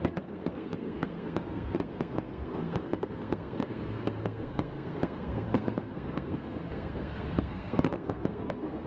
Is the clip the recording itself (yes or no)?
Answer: no